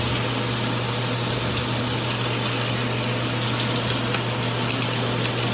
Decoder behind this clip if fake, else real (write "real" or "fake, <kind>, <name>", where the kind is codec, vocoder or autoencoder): real